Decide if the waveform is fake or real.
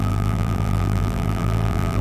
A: fake